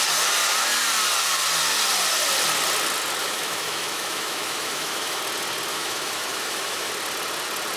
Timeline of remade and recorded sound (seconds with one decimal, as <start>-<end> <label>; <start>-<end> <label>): 0.0-3.2 recorded; 3.2-5.2 remade; 5.2-5.7 recorded; 5.7-6.9 remade; 6.9-7.8 recorded